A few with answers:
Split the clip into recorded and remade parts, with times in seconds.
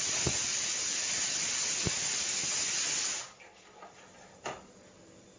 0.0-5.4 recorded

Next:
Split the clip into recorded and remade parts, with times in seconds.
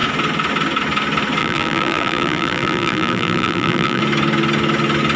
0.0-1.4 recorded; 1.4-4.0 remade; 4.0-5.2 recorded